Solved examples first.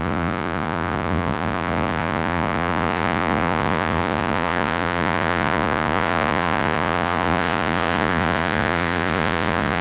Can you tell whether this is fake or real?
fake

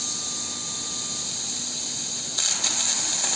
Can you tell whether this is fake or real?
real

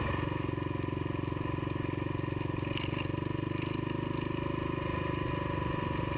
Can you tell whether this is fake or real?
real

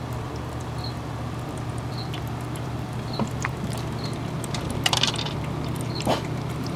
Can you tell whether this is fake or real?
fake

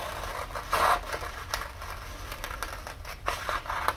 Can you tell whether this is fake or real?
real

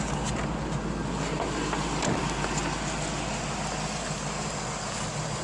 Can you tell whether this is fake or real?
real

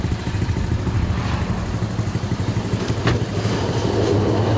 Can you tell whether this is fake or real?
real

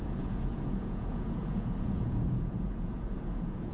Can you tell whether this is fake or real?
fake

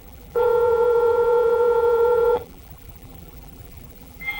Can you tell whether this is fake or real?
fake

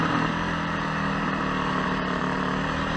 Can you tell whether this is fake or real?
real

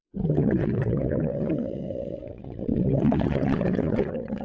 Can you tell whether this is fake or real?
fake